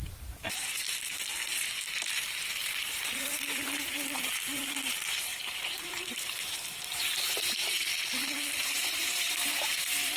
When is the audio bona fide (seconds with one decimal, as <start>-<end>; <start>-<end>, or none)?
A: 7.9-8.6